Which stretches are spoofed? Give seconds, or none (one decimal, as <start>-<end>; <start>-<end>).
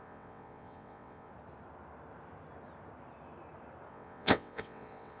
0.0-1.3; 3.9-5.2